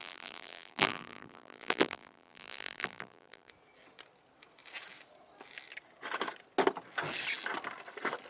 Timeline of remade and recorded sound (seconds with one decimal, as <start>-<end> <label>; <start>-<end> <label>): 0.0-3.5 remade; 3.5-8.3 recorded